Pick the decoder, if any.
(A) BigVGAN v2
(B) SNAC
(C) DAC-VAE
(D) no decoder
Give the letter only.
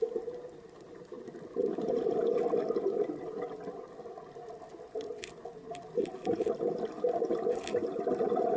D